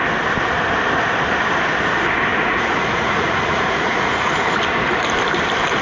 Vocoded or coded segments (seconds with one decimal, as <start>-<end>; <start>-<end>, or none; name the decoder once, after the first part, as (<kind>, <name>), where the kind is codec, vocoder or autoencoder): 2.3-4.3 (vocoder, Vocos)